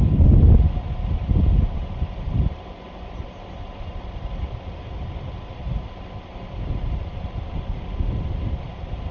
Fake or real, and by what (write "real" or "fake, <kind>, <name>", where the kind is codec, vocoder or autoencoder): real